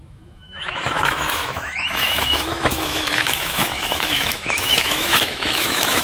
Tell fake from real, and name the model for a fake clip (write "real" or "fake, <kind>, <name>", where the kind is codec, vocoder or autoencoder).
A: fake, autoencoder, DAC-VAE